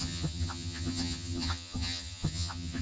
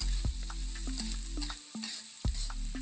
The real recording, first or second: second